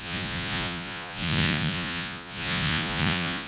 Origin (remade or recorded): remade